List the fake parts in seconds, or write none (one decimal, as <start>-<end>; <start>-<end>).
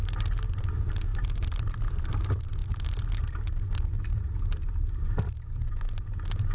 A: none